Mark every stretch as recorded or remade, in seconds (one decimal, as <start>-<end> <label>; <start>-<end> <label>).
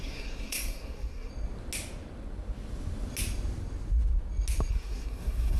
0.0-1.3 remade; 1.3-4.7 recorded; 4.7-5.6 remade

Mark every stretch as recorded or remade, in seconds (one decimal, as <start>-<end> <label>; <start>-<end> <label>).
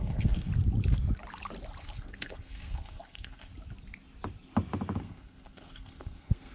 0.0-0.5 remade; 0.5-1.8 recorded; 1.8-3.5 remade; 3.5-5.0 recorded; 5.0-6.5 remade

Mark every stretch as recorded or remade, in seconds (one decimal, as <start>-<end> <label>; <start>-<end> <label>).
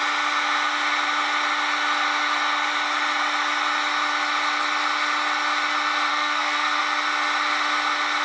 0.0-6.1 recorded; 6.1-6.8 remade; 6.8-8.2 recorded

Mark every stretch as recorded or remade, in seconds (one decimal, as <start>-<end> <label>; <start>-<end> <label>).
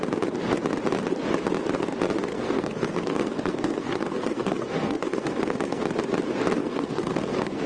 0.0-2.3 recorded; 2.3-5.8 remade; 5.8-6.6 recorded; 6.6-7.7 remade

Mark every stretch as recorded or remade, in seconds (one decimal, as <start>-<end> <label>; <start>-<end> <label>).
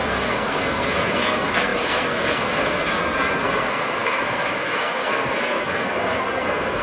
0.0-6.8 remade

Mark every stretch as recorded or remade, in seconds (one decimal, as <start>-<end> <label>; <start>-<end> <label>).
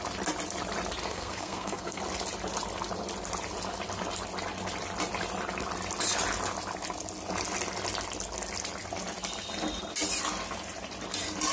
0.0-1.0 recorded; 1.0-2.0 remade; 2.0-11.5 recorded